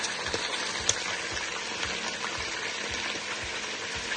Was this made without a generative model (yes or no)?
yes